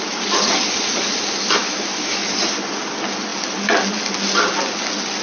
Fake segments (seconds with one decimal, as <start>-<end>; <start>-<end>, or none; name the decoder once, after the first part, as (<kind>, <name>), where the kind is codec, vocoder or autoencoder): 1.6-2.3 (autoencoder, DAC-VAE)